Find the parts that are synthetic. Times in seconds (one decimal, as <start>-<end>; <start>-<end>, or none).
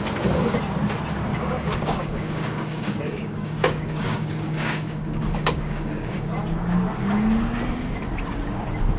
1.3-6.3